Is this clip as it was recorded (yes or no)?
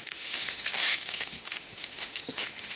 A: no